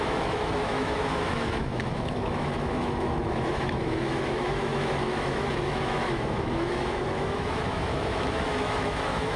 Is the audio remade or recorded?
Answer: remade